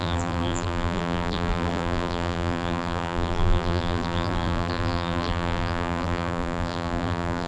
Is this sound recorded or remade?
remade